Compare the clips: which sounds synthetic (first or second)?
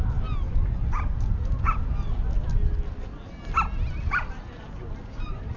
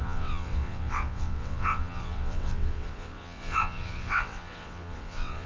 second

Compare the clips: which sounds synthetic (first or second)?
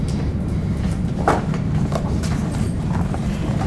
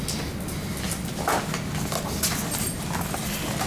first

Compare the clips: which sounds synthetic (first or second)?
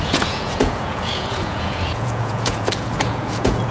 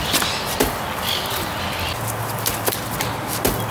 first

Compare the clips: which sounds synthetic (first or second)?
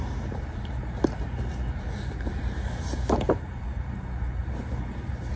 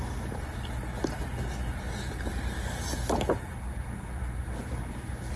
first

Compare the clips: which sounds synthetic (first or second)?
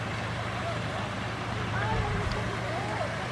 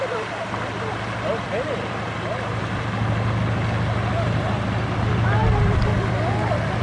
first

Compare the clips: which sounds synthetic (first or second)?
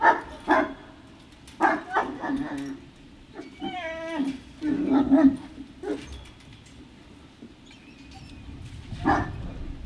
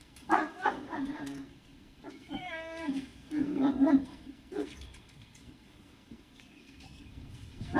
second